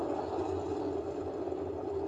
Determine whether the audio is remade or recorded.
recorded